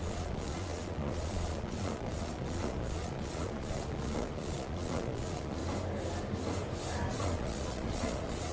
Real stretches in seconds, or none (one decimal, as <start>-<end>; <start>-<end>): 5.6-7.1